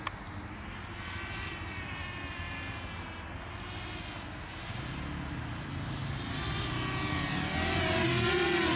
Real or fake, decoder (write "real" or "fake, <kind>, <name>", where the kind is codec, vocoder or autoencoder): real